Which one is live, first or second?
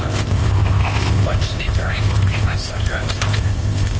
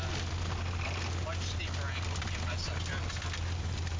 second